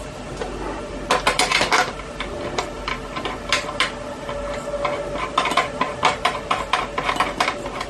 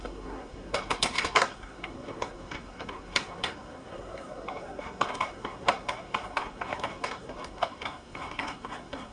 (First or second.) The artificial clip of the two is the second